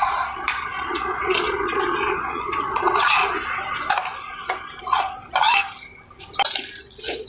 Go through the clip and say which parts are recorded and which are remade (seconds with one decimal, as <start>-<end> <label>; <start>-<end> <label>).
0.0-3.2 remade; 3.2-4.8 recorded; 4.8-5.2 remade; 5.2-6.8 recorded; 6.8-7.3 remade